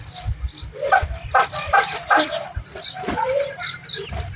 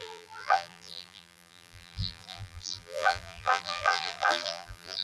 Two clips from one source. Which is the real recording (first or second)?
first